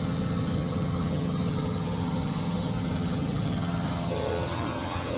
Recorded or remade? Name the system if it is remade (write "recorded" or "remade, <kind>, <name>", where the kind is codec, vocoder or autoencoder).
remade, vocoder, HiFi-GAN